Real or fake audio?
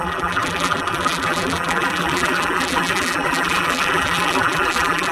fake